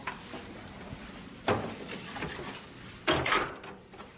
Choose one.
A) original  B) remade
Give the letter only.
A